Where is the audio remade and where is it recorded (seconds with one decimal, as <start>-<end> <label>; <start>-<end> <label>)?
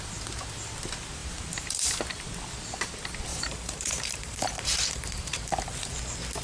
0.0-1.2 recorded; 1.2-2.0 remade; 2.0-3.3 recorded; 3.3-6.0 remade; 6.0-6.4 recorded